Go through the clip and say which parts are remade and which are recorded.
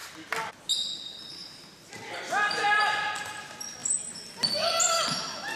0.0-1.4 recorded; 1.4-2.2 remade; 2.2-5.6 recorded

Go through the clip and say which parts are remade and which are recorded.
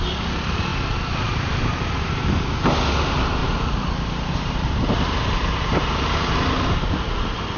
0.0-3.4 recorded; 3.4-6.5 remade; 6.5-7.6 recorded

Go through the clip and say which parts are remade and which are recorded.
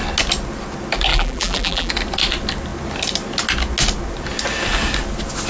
0.0-1.1 recorded; 1.1-1.9 remade; 1.9-5.5 recorded